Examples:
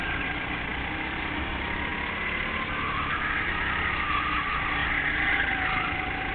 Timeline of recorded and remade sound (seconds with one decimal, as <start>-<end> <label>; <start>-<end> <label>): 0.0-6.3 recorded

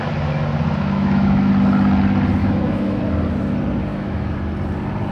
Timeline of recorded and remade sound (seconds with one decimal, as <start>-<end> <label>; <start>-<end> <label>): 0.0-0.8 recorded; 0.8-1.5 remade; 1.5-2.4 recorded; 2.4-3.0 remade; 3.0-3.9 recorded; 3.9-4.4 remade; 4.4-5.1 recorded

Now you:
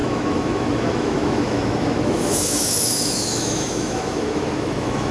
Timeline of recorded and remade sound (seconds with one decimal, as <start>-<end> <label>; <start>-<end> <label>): 0.0-5.1 remade

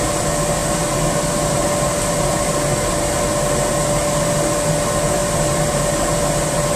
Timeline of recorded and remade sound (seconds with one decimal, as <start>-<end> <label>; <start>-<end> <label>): 0.0-6.8 recorded

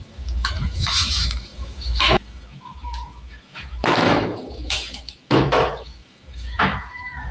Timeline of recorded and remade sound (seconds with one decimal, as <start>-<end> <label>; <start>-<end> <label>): 0.0-7.3 remade

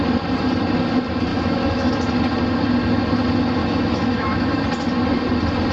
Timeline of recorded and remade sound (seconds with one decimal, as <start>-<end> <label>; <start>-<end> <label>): 0.0-1.3 recorded; 1.3-1.9 remade; 1.9-3.6 recorded; 3.6-4.6 remade; 4.6-5.7 recorded

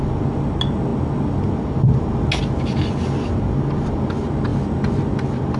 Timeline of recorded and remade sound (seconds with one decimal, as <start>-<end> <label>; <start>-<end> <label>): 0.0-5.6 recorded